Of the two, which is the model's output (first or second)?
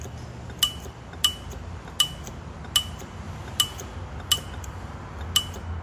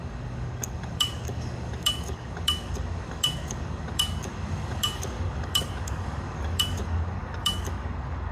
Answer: second